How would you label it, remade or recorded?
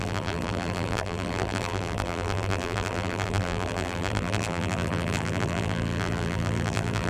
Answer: remade